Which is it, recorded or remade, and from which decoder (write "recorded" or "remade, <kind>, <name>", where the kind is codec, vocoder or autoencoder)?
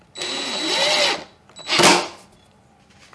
recorded